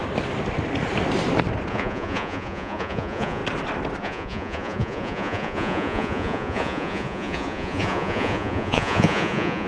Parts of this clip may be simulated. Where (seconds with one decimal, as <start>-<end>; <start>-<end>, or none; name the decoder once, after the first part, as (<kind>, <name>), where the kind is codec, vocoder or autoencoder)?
1.7-3.4 (vocoder, Vocos); 4.0-9.7